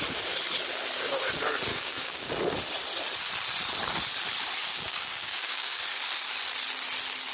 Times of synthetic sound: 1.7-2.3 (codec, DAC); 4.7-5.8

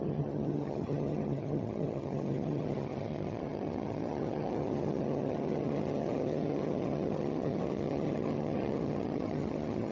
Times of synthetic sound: 0.0-9.9 (vocoder, HiFi-GAN)

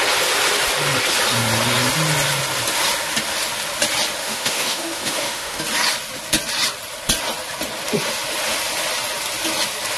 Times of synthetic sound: 4.2-5.6 (autoencoder, DAC-VAE)

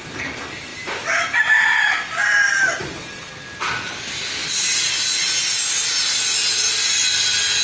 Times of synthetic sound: none

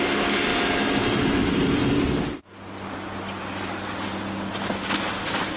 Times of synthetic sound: none